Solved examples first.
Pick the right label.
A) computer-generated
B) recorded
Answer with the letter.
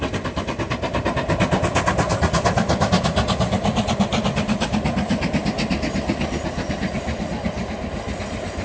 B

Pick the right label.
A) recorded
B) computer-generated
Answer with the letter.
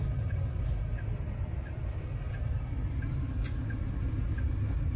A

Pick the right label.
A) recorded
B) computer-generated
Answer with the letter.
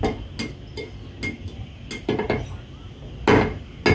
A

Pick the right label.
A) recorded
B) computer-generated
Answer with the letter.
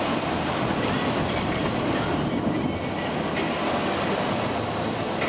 A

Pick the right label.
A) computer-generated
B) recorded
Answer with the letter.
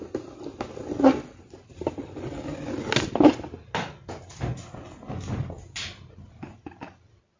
B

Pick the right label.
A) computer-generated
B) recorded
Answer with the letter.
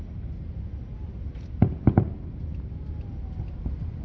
B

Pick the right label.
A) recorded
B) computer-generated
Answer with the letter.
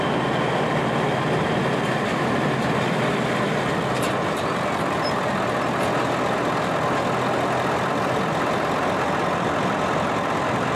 A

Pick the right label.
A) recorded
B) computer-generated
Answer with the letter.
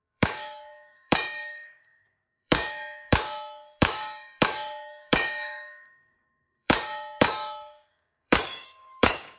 B